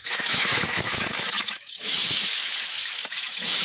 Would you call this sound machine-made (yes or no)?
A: yes